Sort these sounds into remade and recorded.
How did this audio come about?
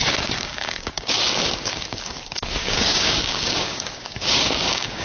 remade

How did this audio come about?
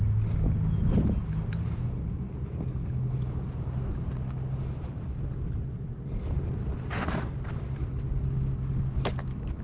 recorded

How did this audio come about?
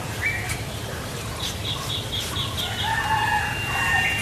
recorded